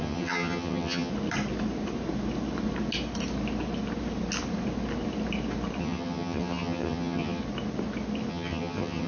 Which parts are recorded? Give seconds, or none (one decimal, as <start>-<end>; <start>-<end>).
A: 1.1-5.8; 7.4-8.3